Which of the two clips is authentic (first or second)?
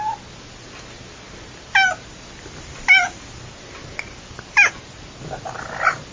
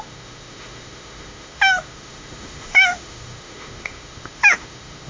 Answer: first